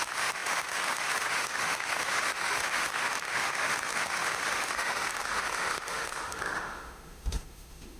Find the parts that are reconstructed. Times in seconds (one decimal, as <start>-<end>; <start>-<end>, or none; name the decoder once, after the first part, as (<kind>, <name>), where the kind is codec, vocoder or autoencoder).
0.0-8.0 (autoencoder, DAC-VAE)